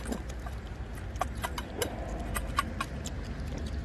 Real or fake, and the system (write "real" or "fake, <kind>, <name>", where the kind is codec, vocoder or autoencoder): real